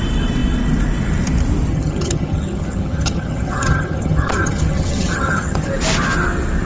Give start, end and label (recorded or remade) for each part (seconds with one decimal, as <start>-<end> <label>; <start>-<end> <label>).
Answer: 0.0-1.7 recorded; 1.7-5.7 remade; 5.7-6.7 recorded